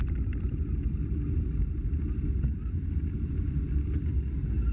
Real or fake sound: real